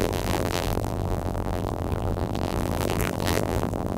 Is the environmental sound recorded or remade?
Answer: remade